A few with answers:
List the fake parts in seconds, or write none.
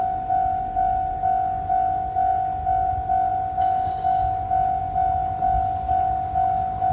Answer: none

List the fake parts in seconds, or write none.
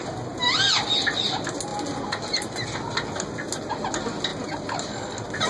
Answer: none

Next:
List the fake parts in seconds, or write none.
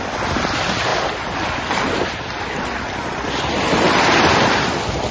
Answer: none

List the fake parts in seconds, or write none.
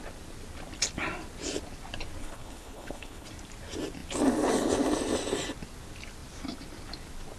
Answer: 2.2-3.3 (codec, HILCodec)